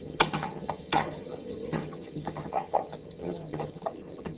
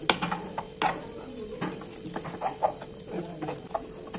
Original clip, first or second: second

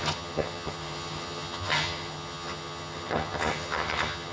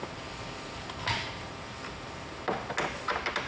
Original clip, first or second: second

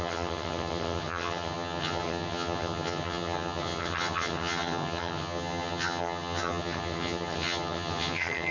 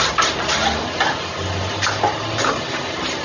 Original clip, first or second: second